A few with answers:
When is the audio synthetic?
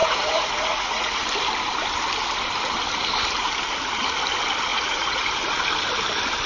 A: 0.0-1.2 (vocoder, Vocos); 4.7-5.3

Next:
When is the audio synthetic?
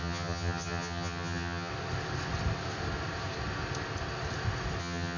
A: 0.0-1.7 (vocoder, HiFi-GAN); 4.8-5.2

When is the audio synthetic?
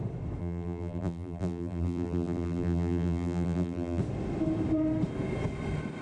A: 0.4-4.0 (vocoder, BigVGAN v2)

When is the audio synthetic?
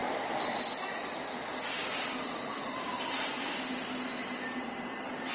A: 0.0-0.7 (vocoder, BigVGAN v2); 1.8-5.3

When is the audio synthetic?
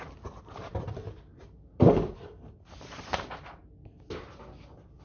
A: 0.7-3.6 (vocoder, BigVGAN v2)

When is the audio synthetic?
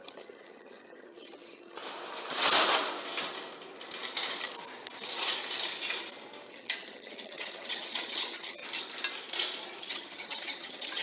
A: 0.0-1.8 (vocoder, HiFi-GAN); 6.5-8.6; 9.8-11.0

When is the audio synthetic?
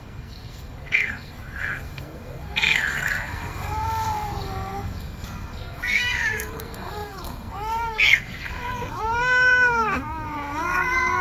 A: 0.0-11.2 (codec, SNAC)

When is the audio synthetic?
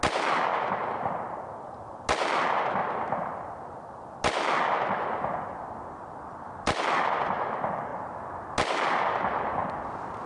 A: none